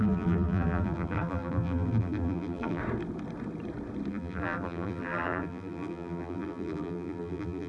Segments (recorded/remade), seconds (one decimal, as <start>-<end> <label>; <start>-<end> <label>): 0.0-2.8 remade; 2.8-4.1 recorded; 4.1-7.7 remade